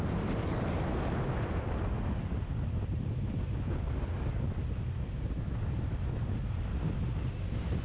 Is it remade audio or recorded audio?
recorded